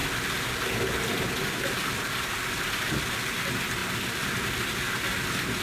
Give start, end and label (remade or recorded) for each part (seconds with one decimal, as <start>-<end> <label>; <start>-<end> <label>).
0.0-5.6 recorded

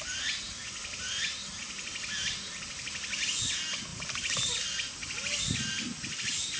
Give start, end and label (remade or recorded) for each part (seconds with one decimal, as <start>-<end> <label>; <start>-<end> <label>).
0.0-6.6 recorded

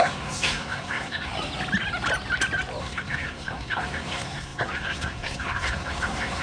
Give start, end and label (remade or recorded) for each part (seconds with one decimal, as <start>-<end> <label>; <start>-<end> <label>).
0.0-1.3 remade; 1.3-2.8 recorded; 2.8-6.4 remade

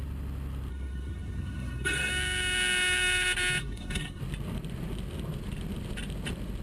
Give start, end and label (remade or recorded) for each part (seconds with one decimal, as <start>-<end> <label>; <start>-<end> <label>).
0.0-0.7 recorded; 0.7-2.1 remade; 2.1-3.6 recorded; 3.6-4.2 remade; 4.2-6.6 recorded

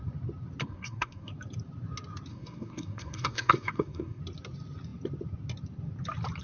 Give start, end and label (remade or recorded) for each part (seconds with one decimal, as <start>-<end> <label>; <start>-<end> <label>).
0.0-0.6 recorded; 0.6-1.3 remade; 1.3-2.3 recorded; 2.3-4.2 remade; 4.2-6.4 recorded

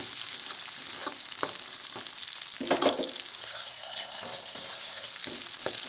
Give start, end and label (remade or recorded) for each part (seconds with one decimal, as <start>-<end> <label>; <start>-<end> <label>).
0.0-3.3 recorded; 3.3-5.1 remade; 5.1-5.9 recorded